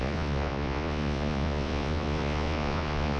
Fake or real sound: fake